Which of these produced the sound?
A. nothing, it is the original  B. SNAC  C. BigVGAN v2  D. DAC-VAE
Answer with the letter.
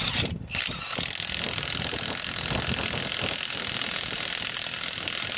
A